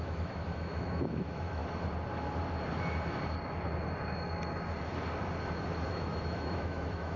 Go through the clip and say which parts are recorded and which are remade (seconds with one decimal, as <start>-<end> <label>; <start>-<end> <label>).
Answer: 0.0-1.6 remade; 1.6-5.9 recorded; 5.9-7.2 remade